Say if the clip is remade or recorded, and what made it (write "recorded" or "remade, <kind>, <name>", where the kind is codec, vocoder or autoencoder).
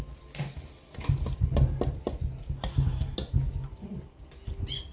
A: recorded